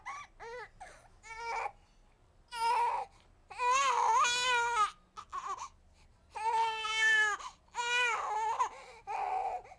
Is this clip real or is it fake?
real